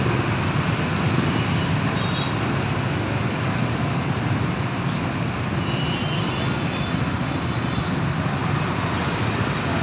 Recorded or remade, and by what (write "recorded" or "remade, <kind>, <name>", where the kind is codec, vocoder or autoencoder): recorded